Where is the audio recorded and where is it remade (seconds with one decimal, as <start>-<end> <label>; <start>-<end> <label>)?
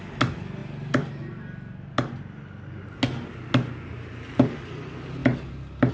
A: 0.0-5.9 recorded